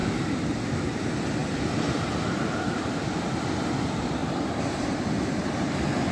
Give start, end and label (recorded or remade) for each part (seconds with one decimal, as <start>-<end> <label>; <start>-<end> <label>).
0.0-0.5 recorded; 0.5-1.4 remade; 1.4-2.6 recorded; 2.6-4.2 remade; 4.2-5.5 recorded; 5.5-6.1 remade